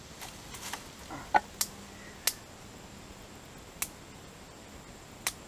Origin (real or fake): real